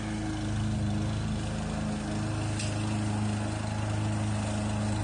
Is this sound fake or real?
real